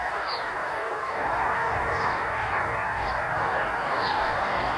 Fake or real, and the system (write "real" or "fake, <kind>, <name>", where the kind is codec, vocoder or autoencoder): fake, codec, DAC